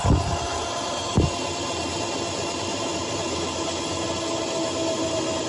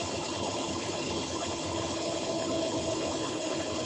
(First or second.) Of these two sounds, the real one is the first